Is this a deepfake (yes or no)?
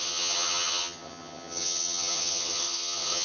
yes